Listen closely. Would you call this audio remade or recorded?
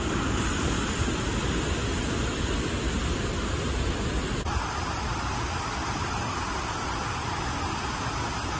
recorded